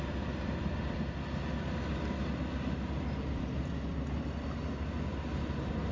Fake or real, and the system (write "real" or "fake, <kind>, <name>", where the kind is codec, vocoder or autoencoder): real